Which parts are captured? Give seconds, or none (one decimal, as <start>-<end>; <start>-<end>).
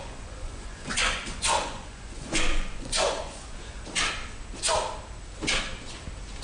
3.8-6.4